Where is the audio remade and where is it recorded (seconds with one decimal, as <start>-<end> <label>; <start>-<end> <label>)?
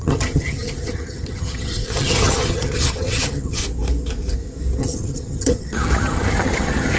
0.0-3.6 remade; 3.6-4.8 recorded; 4.8-7.0 remade